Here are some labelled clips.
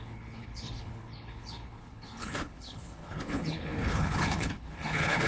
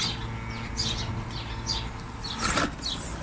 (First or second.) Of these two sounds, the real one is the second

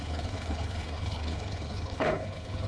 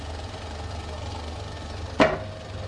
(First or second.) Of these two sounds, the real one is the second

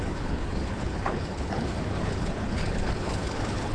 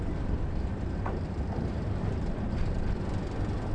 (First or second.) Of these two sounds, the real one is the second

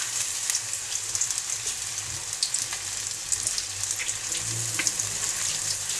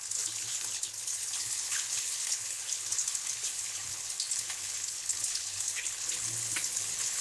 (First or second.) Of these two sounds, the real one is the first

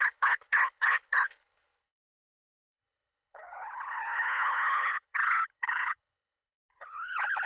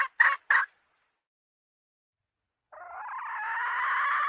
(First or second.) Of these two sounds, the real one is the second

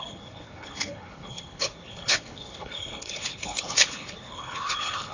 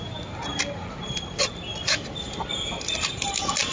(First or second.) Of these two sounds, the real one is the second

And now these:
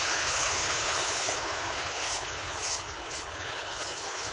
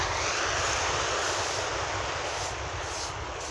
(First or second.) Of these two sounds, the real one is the second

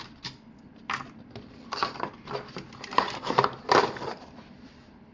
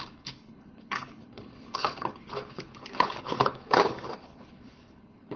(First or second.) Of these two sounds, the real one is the first